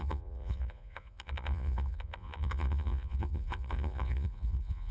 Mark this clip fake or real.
fake